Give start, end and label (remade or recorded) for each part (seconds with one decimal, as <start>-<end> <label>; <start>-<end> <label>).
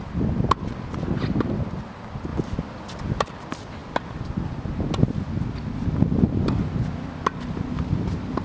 0.0-8.4 recorded